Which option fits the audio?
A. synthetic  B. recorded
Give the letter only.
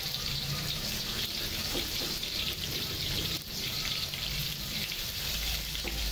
A